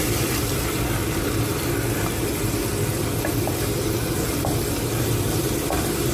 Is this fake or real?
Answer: real